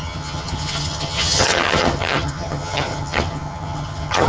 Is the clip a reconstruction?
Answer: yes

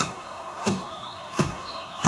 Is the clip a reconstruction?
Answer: yes